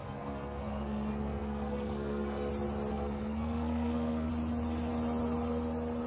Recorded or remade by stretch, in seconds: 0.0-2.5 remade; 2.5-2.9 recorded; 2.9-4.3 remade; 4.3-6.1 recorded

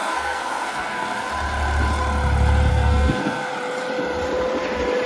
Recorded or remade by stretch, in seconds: 0.0-1.3 remade; 1.3-2.7 recorded; 2.7-3.5 remade; 3.5-5.1 recorded

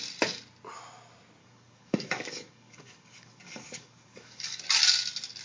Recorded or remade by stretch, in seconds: 0.0-1.4 recorded; 1.4-4.6 remade; 4.6-5.4 recorded

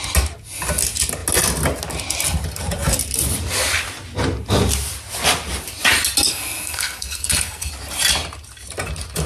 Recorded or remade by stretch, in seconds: 0.0-6.3 recorded; 6.3-7.7 remade; 7.7-9.3 recorded